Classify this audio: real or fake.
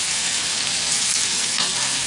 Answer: fake